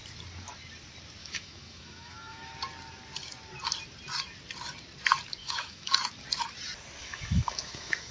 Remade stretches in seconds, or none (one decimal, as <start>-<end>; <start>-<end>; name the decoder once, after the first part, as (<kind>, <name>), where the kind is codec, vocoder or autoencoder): 1.2-2.4 (autoencoder, DAC-VAE); 5.4-5.9; 7.0-8.1